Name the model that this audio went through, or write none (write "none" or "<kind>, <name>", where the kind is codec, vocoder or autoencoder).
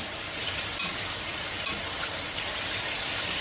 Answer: vocoder, BigVGAN v2